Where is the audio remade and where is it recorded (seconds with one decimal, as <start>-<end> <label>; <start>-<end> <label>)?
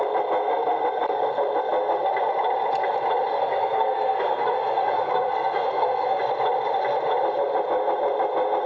0.0-3.3 recorded; 3.3-6.2 remade; 6.2-8.7 recorded